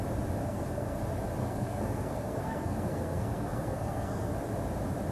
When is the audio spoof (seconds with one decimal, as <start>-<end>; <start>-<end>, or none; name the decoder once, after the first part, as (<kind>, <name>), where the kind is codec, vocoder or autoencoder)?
0.4-1.0 (codec, SNAC); 1.4-4.3